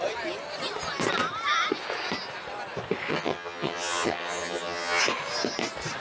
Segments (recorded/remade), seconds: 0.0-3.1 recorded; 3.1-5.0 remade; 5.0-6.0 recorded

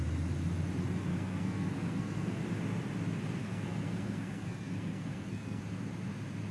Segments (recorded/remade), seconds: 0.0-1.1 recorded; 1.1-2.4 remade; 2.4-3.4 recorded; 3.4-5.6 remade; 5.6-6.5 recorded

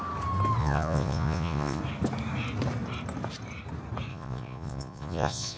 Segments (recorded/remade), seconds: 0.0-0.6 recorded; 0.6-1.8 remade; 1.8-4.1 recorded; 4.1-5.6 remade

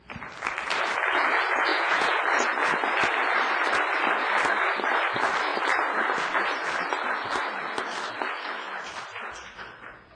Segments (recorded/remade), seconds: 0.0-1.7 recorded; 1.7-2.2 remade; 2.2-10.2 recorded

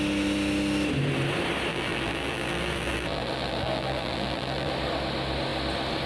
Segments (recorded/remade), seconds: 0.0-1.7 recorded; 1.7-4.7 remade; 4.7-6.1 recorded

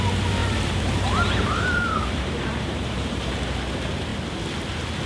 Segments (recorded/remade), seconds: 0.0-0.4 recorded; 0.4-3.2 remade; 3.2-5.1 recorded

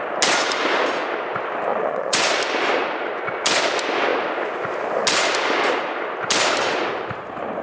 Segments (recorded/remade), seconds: 0.0-1.7 recorded; 1.7-2.3 remade; 2.3-7.6 recorded

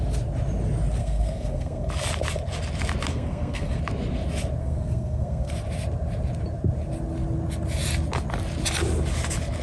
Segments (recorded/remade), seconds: 0.0-1.0 recorded; 1.0-1.9 remade; 1.9-3.1 recorded; 3.1-3.8 remade; 3.8-4.6 recorded; 4.6-5.5 remade; 5.5-9.6 recorded